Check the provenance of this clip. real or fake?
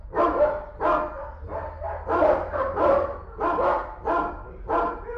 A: real